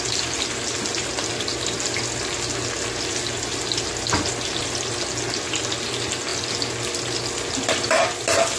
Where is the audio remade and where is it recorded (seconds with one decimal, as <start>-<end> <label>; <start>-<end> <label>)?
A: 0.0-8.6 recorded